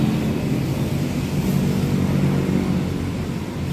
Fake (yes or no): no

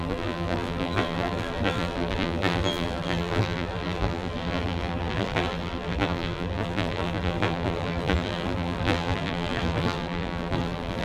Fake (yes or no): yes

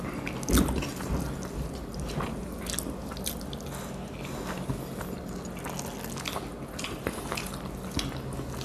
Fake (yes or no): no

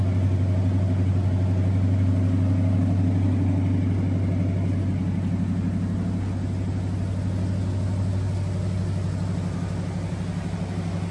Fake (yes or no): no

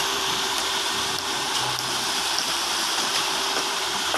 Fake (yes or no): yes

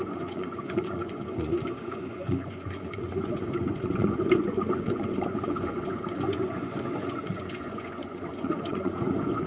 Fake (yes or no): yes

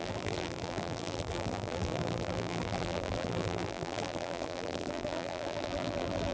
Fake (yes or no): yes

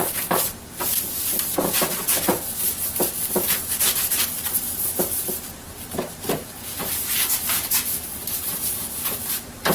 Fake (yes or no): yes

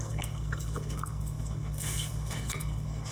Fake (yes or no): yes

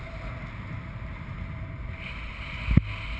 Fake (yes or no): no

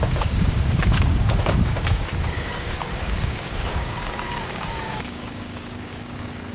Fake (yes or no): yes